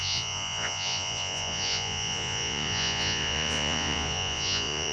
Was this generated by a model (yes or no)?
yes